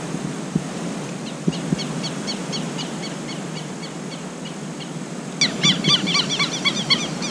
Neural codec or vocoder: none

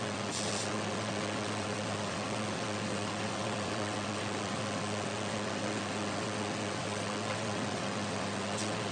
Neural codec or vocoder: vocoder, WaveNeXt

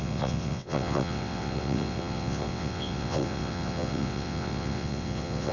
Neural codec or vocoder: vocoder, WaveNeXt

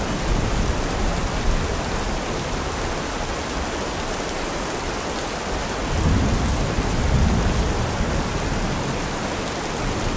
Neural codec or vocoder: none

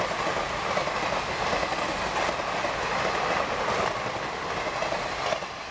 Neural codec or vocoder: none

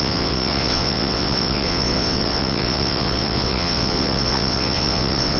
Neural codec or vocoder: vocoder, WaveNeXt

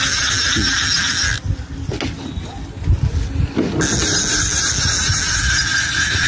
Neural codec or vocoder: none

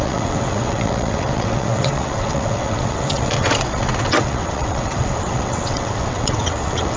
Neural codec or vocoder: vocoder, WaveNeXt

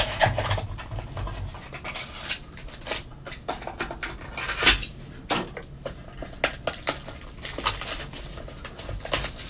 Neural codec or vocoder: none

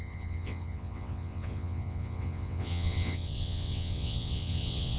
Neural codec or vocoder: vocoder, WaveNeXt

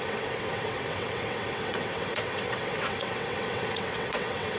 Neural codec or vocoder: vocoder, WaveNeXt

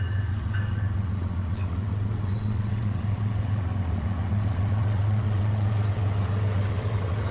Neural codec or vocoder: vocoder, WaveNeXt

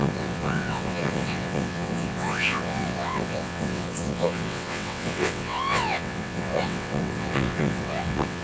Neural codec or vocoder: vocoder, WaveNeXt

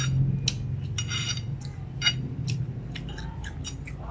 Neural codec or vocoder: none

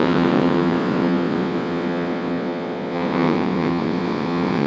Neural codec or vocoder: vocoder, WaveNeXt